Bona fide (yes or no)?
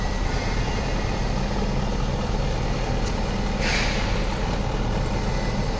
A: yes